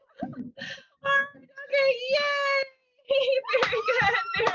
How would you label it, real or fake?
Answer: real